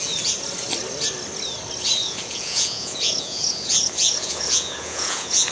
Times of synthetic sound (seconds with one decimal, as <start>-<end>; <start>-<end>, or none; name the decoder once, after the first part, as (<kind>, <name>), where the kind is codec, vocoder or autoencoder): 2.0-5.5 (vocoder, Vocos)